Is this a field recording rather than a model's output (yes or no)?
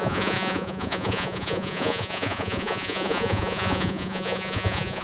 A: no